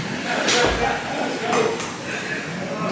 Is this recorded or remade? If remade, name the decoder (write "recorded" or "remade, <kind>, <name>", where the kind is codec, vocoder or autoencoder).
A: recorded